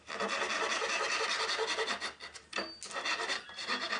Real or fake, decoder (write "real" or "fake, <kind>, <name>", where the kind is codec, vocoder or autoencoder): real